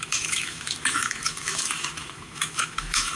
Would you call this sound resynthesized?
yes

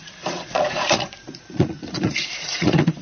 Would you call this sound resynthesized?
yes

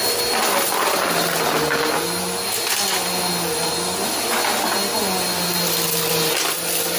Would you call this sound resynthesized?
no